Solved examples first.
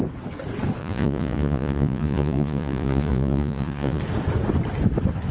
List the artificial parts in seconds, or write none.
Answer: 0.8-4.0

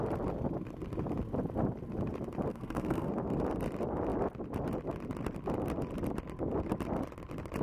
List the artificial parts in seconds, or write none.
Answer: 2.5-3.1

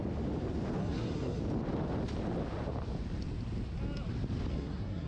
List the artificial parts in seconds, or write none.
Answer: 0.8-1.4; 4.5-5.1

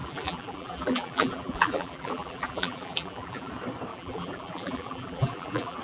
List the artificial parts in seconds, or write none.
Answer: 0.0-3.5; 3.9-5.8